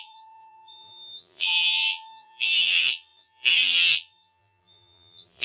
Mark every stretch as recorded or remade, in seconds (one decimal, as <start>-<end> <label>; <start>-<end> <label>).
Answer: 0.0-5.4 remade